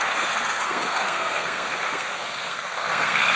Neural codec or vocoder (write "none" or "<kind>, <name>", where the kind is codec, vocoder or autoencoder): codec, SNAC